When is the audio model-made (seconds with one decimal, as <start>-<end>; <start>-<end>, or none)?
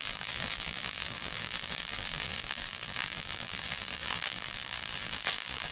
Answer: 0.0-5.7